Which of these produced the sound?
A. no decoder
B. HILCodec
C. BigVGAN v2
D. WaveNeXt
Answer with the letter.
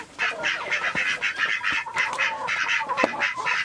A